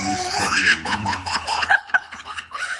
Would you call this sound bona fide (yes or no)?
no